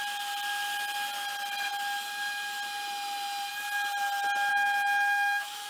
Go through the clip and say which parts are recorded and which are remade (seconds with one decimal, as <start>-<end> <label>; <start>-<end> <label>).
0.0-4.5 recorded; 4.5-5.7 remade